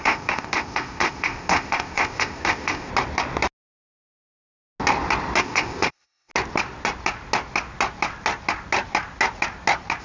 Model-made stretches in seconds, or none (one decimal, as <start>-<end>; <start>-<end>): 0.0-2.9; 5.4-6.3